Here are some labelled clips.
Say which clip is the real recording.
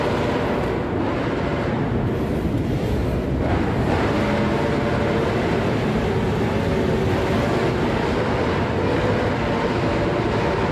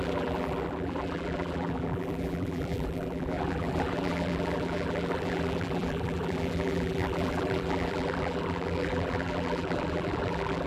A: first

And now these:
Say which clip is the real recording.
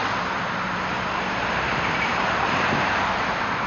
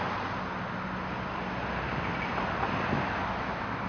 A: second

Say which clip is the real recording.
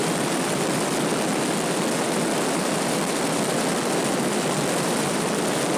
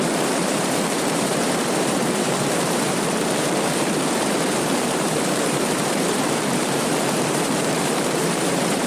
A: first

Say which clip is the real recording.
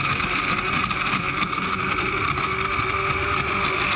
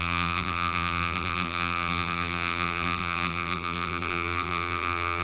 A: first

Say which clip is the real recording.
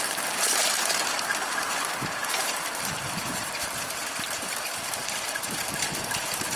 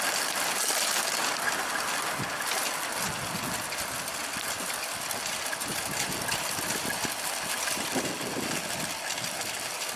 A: second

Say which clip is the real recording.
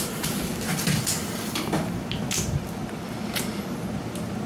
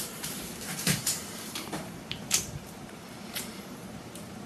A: first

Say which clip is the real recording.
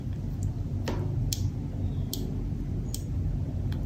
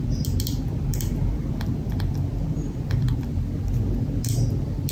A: first